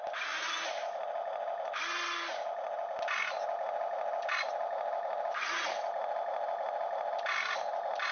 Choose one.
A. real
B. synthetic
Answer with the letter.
A